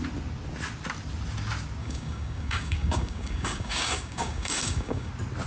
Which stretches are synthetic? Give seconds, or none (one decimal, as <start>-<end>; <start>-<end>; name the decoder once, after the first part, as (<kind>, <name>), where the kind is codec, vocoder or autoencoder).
1.8-5.1 (codec, DAC)